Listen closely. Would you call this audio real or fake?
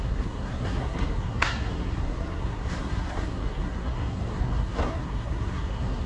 fake